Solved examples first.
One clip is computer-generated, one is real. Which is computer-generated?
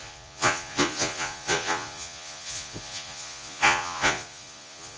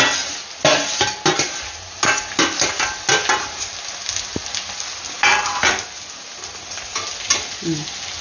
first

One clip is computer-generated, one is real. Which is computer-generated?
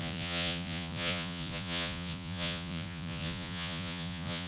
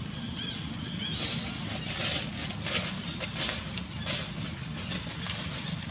first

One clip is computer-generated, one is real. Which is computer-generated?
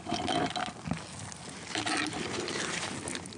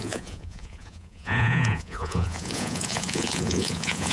second